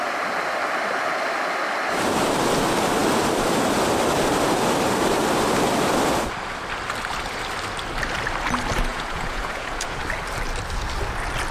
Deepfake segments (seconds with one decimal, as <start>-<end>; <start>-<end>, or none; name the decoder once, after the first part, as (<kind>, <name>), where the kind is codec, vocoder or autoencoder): 8.9-10.0 (vocoder, Vocos)